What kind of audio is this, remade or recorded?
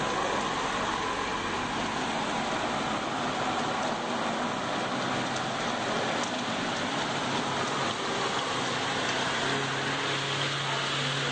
recorded